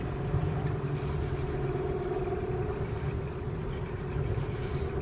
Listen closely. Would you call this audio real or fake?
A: real